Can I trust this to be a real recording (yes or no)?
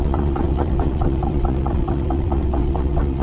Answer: no